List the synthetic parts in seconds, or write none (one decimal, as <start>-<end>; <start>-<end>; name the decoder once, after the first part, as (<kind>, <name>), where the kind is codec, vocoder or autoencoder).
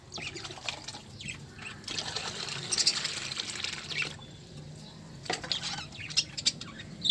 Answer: 2.9-4.5 (vocoder, BigVGAN v2)